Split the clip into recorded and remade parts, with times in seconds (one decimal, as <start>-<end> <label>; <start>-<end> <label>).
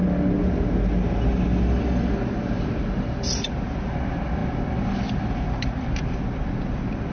0.0-7.1 recorded